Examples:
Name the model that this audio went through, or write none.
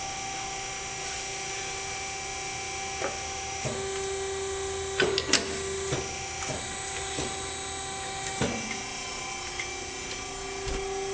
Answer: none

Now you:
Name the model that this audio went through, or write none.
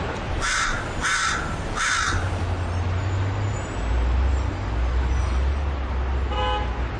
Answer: none